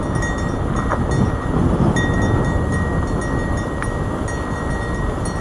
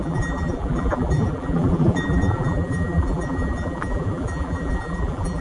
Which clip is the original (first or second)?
first